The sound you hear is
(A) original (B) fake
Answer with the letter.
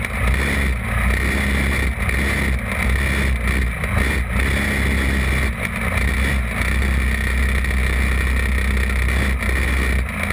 A